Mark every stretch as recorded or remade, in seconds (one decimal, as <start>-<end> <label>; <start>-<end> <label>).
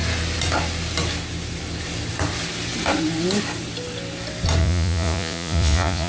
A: 0.0-4.6 recorded; 4.6-6.1 remade